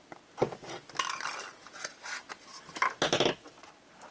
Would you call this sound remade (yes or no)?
no